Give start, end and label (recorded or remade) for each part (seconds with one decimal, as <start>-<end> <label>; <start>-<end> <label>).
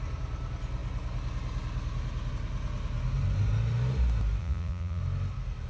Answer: 0.0-4.4 recorded; 4.4-5.0 remade; 5.0-5.7 recorded